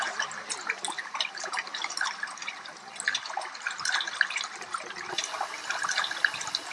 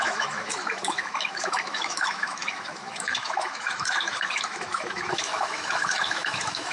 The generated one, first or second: second